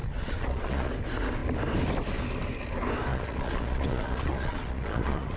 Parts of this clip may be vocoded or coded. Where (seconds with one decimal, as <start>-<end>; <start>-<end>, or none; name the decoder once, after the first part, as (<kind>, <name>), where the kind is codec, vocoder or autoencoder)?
0.0-0.9 (vocoder, Vocos); 3.1-5.4